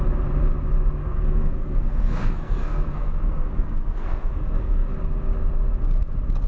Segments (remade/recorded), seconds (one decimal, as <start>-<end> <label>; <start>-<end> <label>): 0.0-1.0 recorded; 1.0-4.9 remade; 4.9-6.5 recorded